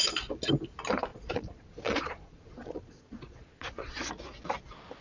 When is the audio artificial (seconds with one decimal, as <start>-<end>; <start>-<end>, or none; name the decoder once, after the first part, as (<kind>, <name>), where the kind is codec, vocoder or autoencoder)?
1.1-4.1 (vocoder, Vocos)